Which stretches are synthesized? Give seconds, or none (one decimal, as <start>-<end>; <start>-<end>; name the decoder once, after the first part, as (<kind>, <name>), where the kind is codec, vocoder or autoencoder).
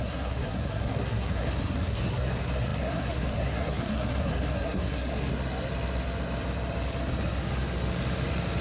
0.0-5.3 (codec, SNAC)